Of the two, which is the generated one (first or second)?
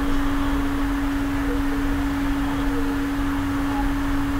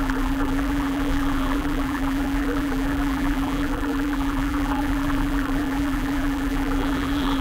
second